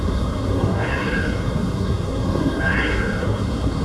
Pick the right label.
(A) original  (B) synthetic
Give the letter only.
B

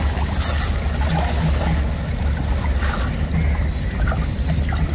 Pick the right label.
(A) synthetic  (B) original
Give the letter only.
B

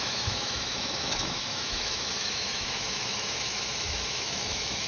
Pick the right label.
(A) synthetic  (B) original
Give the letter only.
A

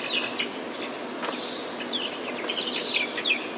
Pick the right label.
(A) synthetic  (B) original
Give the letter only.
B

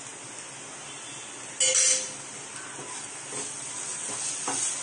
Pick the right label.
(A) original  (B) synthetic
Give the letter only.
A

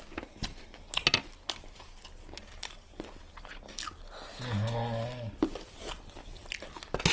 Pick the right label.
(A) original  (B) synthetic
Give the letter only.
A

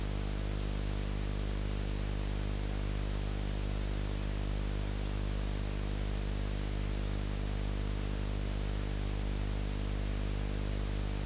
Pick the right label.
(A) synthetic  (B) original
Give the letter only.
B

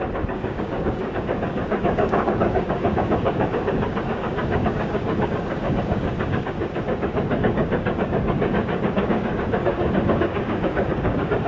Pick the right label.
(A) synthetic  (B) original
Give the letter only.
A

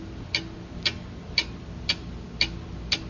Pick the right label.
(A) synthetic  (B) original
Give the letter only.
B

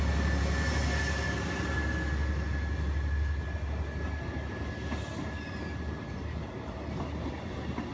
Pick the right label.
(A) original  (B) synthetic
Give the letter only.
A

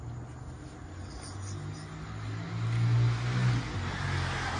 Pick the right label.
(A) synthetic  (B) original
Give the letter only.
B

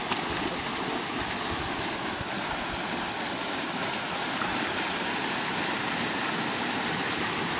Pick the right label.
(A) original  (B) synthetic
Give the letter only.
A